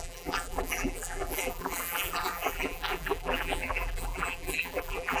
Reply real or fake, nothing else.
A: fake